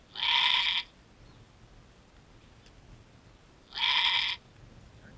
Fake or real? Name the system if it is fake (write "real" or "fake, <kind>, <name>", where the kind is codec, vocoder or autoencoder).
real